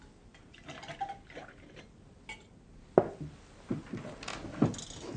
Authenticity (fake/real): real